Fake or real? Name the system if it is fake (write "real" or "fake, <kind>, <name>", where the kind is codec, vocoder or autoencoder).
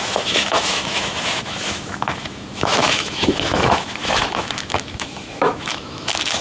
fake, autoencoder, DAC-VAE